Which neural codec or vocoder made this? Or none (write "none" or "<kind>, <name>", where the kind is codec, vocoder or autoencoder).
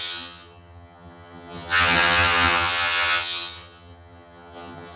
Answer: vocoder, HiFi-GAN